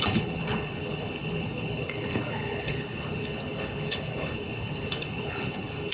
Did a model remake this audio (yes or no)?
yes